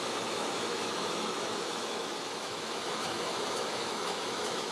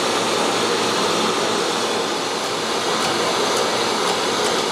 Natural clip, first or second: second